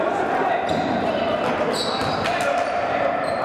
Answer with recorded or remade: recorded